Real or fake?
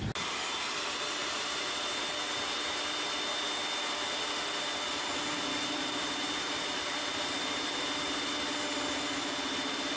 real